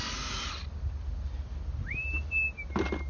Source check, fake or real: real